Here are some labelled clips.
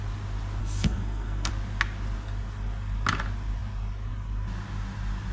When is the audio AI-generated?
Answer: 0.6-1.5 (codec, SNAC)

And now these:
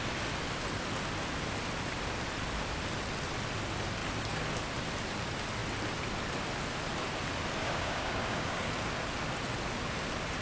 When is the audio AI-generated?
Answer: 7.6-8.7 (codec, DAC)

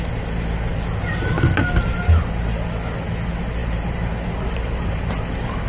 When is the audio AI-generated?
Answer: 3.6-5.7 (vocoder, BigVGAN v2)

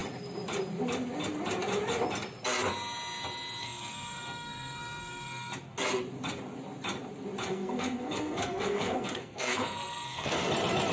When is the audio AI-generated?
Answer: 3.6-5.5 (codec, SNAC); 7.5-10.5

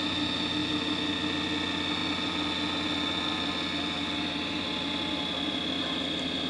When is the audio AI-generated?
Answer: none

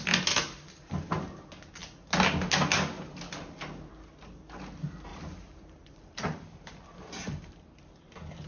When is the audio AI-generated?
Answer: 5.1-6.8 (vocoder, BigVGAN v2)

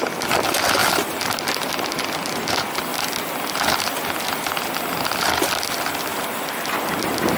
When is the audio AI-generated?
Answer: 6.1-6.9 (vocoder, BigVGAN v2)

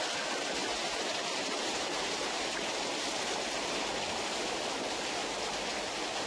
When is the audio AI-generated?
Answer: 0.6-2.8 (vocoder, BigVGAN v2)